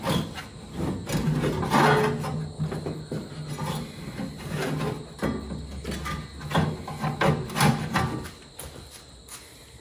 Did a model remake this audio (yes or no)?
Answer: no